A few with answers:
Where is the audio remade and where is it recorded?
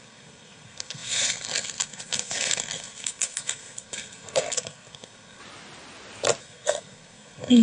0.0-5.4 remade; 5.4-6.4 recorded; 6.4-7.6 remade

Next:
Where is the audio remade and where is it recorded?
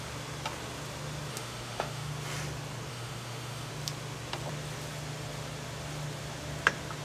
0.0-1.3 recorded; 1.3-2.1 remade; 2.1-2.9 recorded; 2.9-3.7 remade; 3.7-7.0 recorded